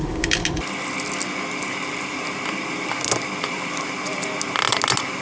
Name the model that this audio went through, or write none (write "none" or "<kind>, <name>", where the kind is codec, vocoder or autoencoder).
none